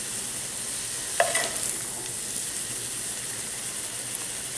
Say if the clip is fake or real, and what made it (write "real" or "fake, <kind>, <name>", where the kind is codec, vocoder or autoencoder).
real